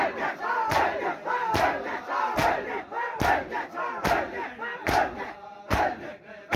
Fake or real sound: real